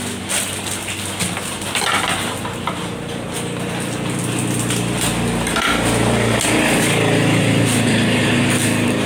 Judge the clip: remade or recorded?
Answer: recorded